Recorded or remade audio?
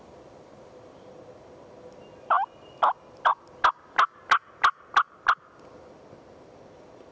recorded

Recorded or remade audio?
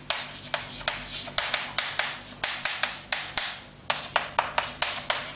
recorded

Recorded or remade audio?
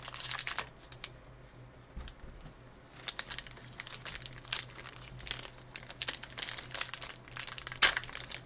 recorded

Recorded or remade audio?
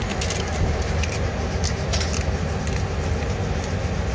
recorded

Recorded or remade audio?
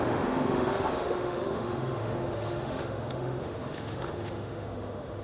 remade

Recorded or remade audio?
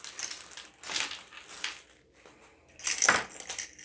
recorded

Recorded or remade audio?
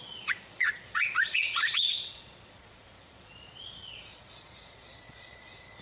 remade